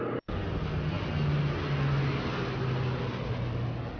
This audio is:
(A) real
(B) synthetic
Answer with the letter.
A